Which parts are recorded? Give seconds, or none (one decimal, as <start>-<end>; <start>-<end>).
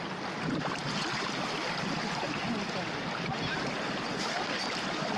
0.0-5.2